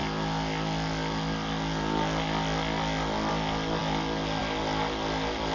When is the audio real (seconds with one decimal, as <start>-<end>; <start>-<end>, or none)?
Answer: 0.0-5.5